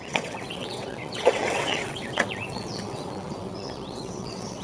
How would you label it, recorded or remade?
remade